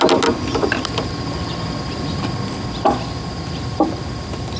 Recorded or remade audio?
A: recorded